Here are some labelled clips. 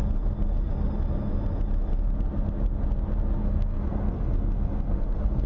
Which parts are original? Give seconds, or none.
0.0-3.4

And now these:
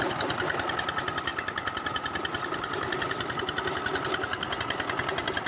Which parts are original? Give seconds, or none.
0.0-5.5

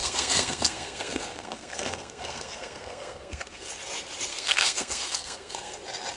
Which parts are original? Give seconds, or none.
3.7-4.3; 5.8-6.2

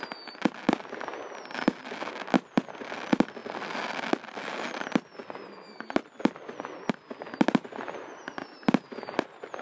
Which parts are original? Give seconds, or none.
0.0-9.6